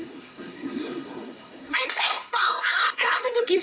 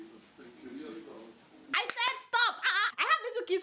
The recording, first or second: second